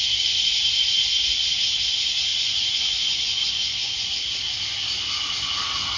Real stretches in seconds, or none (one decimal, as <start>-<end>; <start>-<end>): 0.0-2.3; 4.1-6.0